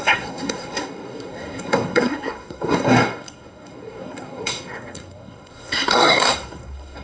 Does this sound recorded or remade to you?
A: remade